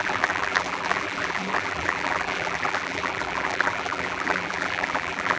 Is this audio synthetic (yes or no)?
yes